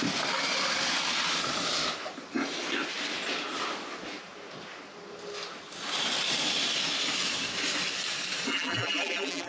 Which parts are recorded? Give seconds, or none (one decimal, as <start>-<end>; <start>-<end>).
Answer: 0.0-8.5